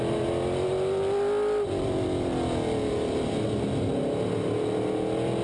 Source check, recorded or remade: recorded